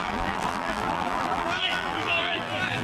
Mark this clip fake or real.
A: fake